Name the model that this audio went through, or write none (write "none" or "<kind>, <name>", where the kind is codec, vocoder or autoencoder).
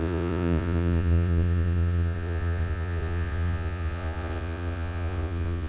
vocoder, Vocos